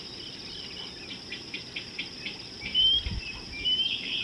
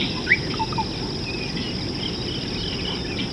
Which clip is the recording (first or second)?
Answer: second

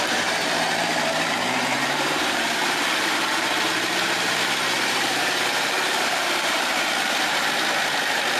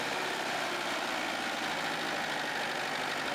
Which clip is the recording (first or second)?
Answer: second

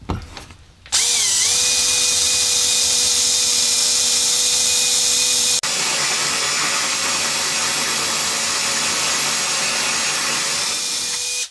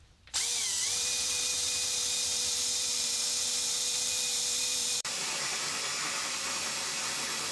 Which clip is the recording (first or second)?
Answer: first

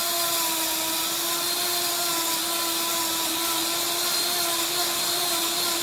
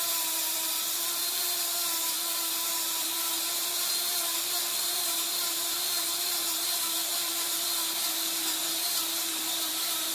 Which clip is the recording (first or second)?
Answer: first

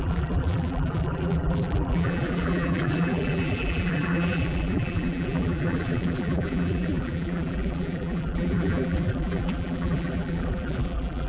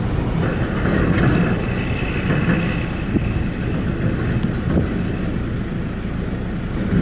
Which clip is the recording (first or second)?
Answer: second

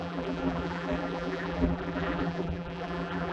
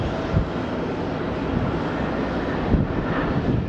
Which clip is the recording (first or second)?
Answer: second